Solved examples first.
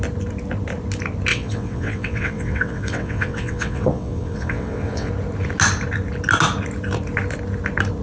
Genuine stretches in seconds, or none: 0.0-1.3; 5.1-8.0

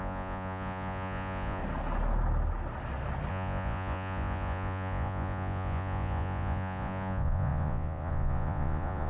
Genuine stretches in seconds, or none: 1.6-3.3

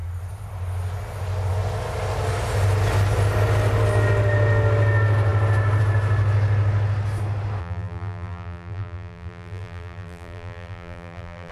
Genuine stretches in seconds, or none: 0.0-7.6

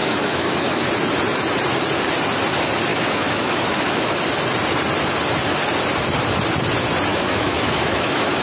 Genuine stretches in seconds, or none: 0.8-2.9; 4.2-7.1

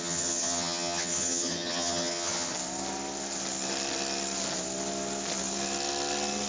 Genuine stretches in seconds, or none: 2.5-6.5